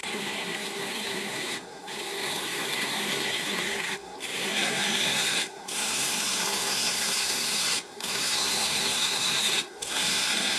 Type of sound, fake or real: fake